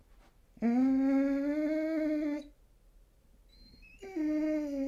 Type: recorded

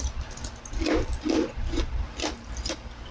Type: recorded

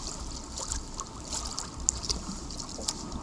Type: recorded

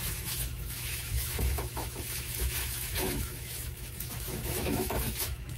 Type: remade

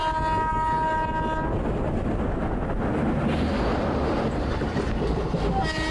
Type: recorded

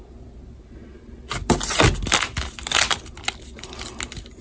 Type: recorded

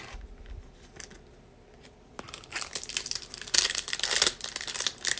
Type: recorded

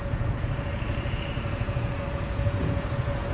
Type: remade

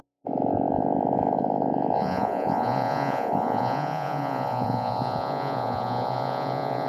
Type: remade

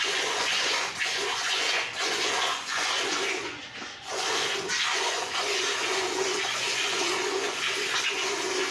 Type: remade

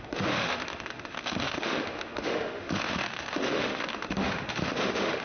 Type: remade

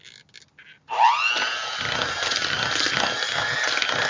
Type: recorded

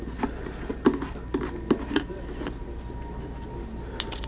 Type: recorded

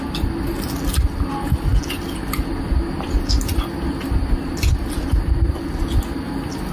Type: recorded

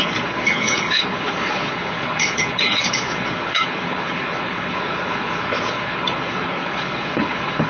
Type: remade